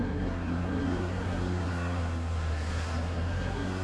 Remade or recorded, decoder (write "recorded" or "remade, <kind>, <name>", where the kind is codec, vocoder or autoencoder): remade, codec, SNAC